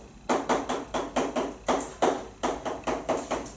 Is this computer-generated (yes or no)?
no